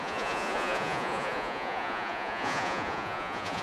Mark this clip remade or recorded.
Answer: remade